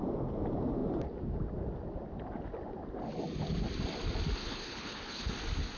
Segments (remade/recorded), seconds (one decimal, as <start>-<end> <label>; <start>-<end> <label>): 0.0-4.4 recorded; 4.4-5.3 remade; 5.3-5.8 recorded